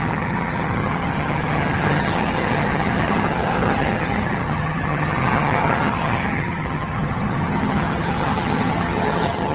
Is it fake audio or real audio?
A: fake